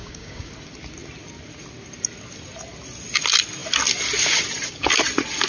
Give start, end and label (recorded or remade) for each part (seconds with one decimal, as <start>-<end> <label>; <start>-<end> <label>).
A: 0.0-0.5 remade; 0.5-5.5 recorded